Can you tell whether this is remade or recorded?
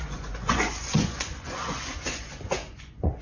remade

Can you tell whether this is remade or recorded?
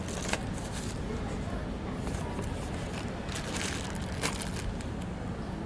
recorded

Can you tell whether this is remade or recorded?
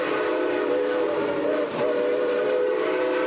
remade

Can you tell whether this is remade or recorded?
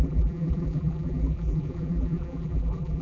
remade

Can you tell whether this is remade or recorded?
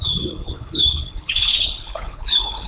remade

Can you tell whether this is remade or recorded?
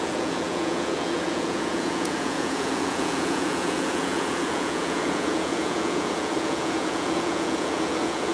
remade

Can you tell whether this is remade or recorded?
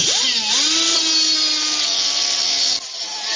recorded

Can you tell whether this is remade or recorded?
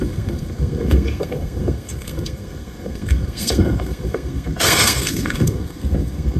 remade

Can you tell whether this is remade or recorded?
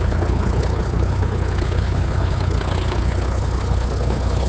remade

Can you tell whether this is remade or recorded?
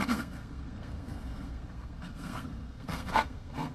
remade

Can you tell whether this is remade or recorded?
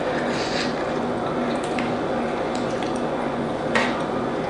remade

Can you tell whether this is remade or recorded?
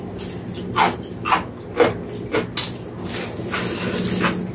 recorded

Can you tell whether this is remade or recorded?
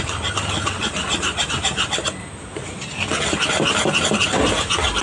recorded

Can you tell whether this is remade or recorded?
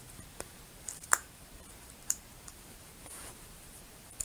remade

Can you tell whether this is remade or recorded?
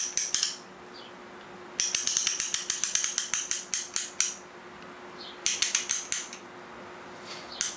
recorded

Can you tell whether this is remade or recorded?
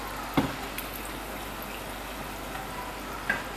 recorded